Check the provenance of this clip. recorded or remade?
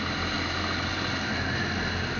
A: recorded